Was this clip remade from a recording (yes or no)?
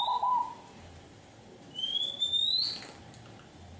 no